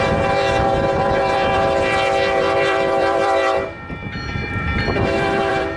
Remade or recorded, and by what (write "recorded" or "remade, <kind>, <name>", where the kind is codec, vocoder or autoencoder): remade, vocoder, BigVGAN v2